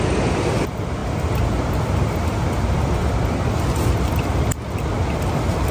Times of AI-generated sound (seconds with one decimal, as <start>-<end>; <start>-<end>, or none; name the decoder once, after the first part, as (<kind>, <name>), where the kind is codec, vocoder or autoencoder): none